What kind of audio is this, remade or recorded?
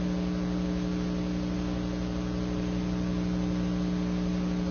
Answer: recorded